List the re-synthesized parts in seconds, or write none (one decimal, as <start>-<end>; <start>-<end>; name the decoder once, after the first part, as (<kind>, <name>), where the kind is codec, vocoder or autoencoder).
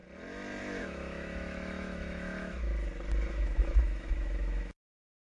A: 0.6-2.7 (autoencoder, DAC-VAE); 3.3-5.3